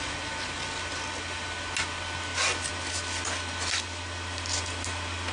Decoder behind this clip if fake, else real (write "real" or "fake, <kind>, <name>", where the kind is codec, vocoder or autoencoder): real